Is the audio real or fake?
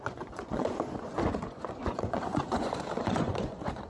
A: fake